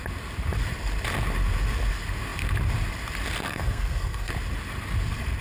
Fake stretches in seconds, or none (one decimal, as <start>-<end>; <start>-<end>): 3.4-4.3